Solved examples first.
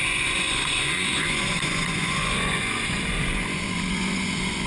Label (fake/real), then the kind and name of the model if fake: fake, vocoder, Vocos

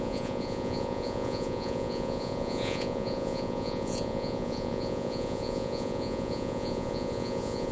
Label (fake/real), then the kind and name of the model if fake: fake, vocoder, Vocos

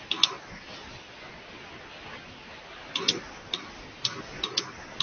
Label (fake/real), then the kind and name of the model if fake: real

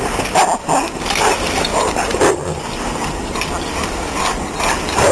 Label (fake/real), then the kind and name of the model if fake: real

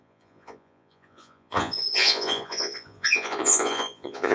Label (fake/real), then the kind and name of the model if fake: fake, vocoder, Vocos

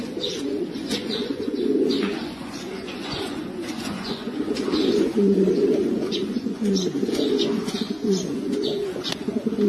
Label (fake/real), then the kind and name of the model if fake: fake, vocoder, Vocos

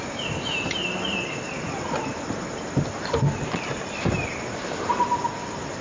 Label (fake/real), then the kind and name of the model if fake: real